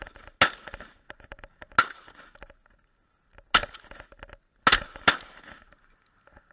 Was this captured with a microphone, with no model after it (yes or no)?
yes